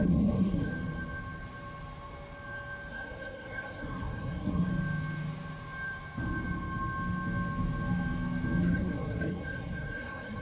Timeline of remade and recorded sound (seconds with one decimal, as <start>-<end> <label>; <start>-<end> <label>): 0.0-0.7 remade; 0.7-2.9 recorded; 2.9-4.7 remade; 4.7-8.6 recorded; 8.6-10.4 remade

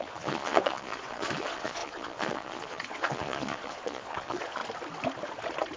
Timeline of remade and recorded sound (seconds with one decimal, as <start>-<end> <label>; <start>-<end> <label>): 0.0-4.6 remade; 4.6-5.8 recorded

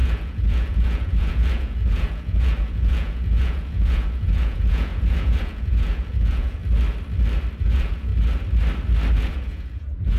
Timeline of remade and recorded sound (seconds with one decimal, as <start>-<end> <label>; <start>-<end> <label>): 0.0-6.6 remade; 6.6-7.6 recorded; 7.6-8.1 remade; 8.1-9.1 recorded; 9.1-10.2 remade